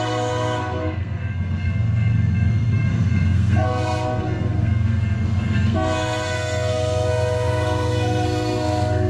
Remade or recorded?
remade